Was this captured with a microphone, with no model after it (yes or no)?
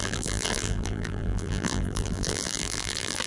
no